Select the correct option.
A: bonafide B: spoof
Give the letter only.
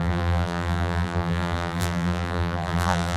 B